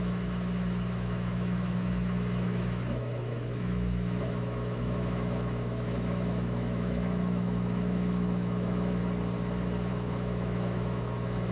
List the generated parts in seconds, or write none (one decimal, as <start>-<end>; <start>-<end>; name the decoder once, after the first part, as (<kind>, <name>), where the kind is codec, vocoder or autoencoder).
0.0-9.0 (autoencoder, DAC-VAE); 9.9-11.5